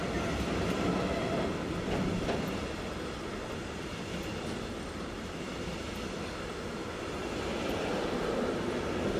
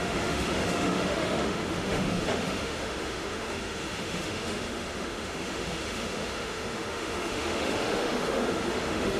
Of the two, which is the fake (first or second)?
second